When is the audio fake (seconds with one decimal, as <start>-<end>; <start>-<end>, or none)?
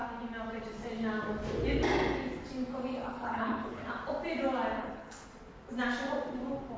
3.0-3.8; 4.8-5.3